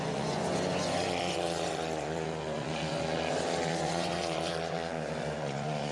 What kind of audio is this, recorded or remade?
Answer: remade